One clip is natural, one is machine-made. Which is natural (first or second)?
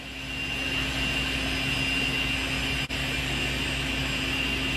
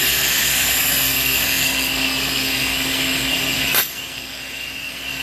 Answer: first